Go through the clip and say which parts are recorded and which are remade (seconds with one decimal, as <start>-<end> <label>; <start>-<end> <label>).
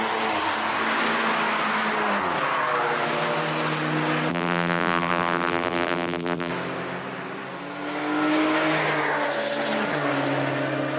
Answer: 0.0-4.3 recorded; 4.3-6.5 remade; 6.5-11.0 recorded